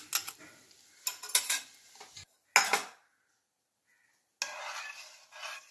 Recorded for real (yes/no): yes